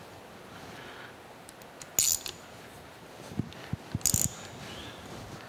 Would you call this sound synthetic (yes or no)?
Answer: no